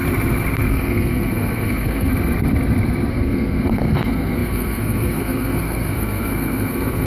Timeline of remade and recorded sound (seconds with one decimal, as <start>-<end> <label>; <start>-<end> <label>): 0.0-0.7 recorded; 0.7-2.1 remade; 2.1-3.1 recorded; 3.1-7.1 remade